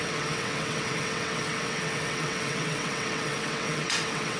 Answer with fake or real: fake